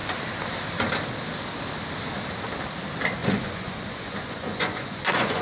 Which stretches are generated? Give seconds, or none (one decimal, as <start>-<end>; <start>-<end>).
3.2-5.4